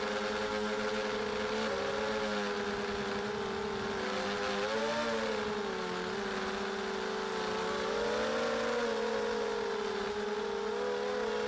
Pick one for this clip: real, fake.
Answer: real